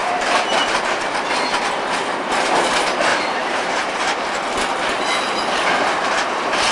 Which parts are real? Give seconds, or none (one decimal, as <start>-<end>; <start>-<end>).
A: 1.3-3.1; 4.7-6.7